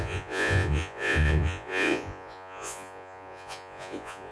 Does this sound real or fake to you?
fake